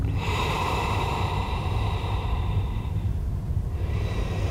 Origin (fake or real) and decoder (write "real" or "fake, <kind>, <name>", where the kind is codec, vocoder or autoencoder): fake, vocoder, BigVGAN v2